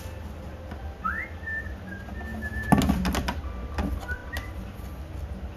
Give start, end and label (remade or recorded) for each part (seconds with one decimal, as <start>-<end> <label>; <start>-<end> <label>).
0.0-5.6 recorded